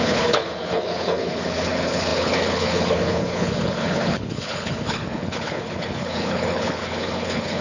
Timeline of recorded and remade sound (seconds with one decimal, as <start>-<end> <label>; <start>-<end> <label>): 0.0-7.6 remade